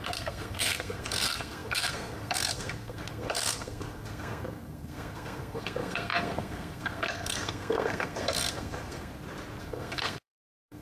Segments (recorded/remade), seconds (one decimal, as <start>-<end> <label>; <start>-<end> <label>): 0.0-9.1 remade; 9.1-9.6 recorded; 9.6-10.8 remade